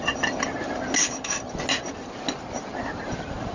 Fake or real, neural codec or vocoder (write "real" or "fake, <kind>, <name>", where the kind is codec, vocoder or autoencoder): real